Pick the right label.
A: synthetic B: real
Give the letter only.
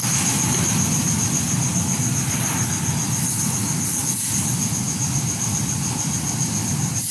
B